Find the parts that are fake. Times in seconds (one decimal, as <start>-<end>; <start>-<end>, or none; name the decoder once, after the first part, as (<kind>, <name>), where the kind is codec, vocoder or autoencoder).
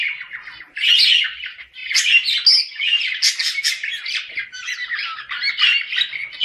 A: none